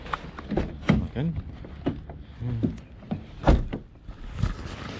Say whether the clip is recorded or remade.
recorded